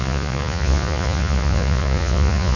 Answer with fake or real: fake